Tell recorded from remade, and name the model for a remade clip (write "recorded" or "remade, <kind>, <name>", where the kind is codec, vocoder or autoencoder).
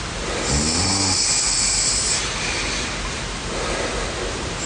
recorded